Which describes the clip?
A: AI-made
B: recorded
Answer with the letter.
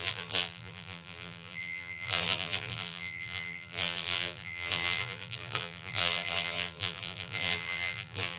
A